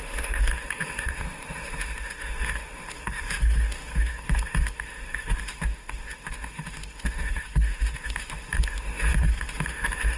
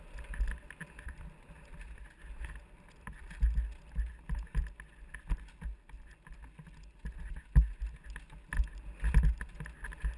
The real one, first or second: second